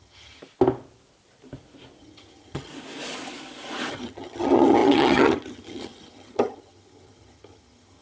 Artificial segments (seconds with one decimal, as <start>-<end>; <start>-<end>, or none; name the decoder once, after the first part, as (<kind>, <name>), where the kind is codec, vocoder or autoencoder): 0.0-0.4 (vocoder, HiFi-GAN); 2.0-2.7; 3.9-8.0